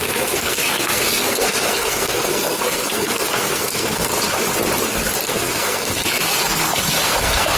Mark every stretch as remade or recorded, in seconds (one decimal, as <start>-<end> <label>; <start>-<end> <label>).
0.0-4.1 remade; 4.1-5.2 recorded; 5.2-7.6 remade